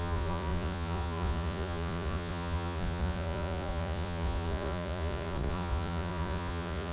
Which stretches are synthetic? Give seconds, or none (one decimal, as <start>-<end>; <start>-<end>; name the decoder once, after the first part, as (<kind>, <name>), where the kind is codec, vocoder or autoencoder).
0.0-6.9 (vocoder, Vocos)